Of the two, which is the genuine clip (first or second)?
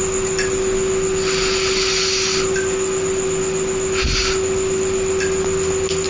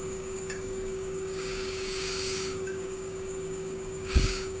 first